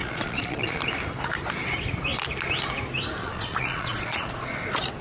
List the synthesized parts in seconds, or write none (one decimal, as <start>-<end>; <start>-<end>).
0.0-0.8; 3.2-4.5